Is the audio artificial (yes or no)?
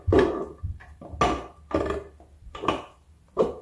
no